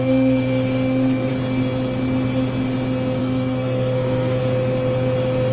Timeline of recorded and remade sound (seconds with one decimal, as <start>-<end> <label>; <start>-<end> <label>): 0.0-1.3 remade; 1.3-3.2 recorded; 3.2-4.4 remade; 4.4-5.5 recorded